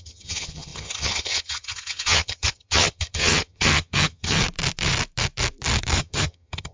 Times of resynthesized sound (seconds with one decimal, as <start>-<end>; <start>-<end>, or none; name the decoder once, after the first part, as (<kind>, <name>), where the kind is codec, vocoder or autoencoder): 0.0-4.4 (vocoder, HiFi-GAN); 6.0-6.7